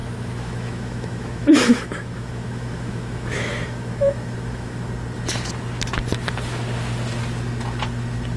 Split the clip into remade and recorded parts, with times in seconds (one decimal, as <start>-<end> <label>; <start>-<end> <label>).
0.0-4.9 remade; 4.9-8.4 recorded